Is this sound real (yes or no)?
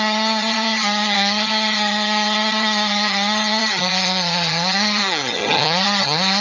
no